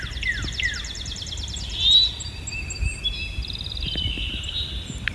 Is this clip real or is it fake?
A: real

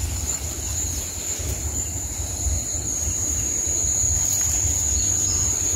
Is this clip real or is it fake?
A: fake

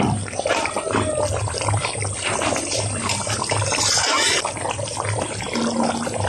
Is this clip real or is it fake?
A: real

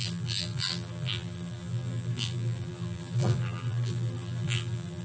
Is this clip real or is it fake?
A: fake